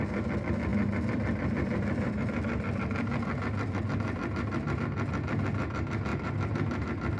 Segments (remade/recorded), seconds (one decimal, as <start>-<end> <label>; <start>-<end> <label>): 0.0-0.7 recorded; 0.7-4.8 remade; 4.8-6.1 recorded; 6.1-7.2 remade